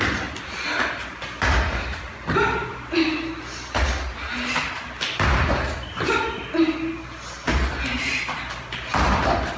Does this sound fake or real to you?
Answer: real